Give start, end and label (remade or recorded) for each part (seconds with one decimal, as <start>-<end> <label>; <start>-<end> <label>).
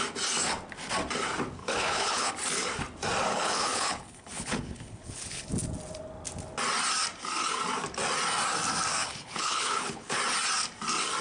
0.0-1.6 recorded; 1.6-2.3 remade; 2.3-3.3 recorded; 3.3-5.5 remade; 5.5-8.9 recorded; 8.9-10.2 remade; 10.2-11.2 recorded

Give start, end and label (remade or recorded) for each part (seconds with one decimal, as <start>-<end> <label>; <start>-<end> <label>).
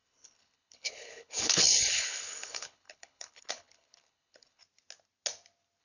0.0-4.6 remade; 4.6-5.8 recorded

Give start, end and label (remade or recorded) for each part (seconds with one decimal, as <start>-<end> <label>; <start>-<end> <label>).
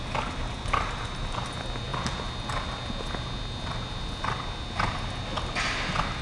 0.0-6.2 recorded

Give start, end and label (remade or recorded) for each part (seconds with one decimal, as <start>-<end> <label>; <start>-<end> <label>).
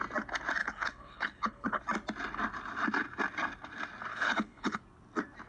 0.0-0.6 recorded; 0.6-1.8 remade; 1.8-4.1 recorded; 4.1-4.8 remade; 4.8-5.5 recorded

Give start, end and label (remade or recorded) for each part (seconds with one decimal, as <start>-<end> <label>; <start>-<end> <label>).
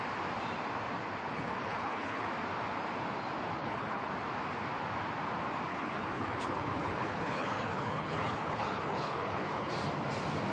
0.0-1.3 recorded; 1.3-2.3 remade; 2.3-3.6 recorded; 3.6-4.1 remade; 4.1-5.7 recorded; 5.7-9.7 remade; 9.7-10.5 recorded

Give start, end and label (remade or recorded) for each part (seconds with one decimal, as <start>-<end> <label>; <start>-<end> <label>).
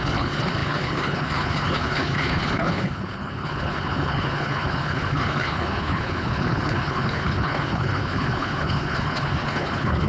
0.0-10.1 remade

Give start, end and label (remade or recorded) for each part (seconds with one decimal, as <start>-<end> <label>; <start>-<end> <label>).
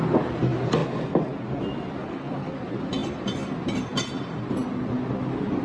0.0-2.0 recorded; 2.0-2.5 remade; 2.5-5.6 recorded